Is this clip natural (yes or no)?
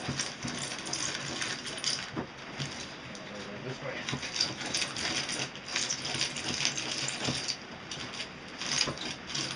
yes